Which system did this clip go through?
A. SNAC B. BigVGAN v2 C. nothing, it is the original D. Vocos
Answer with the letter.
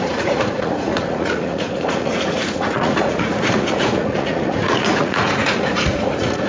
D